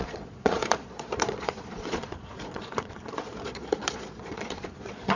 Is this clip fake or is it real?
fake